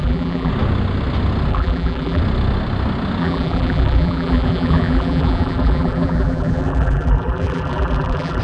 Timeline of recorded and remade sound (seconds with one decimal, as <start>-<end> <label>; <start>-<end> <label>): 0.0-0.5 remade; 0.5-1.5 recorded; 1.5-2.2 remade; 2.2-3.2 recorded; 3.2-8.4 remade